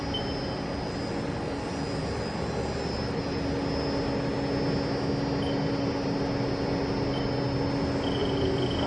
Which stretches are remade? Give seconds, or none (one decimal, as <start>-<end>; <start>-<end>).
none